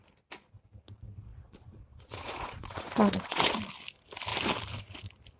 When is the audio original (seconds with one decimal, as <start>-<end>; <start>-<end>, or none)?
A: 0.0-1.3; 3.6-5.4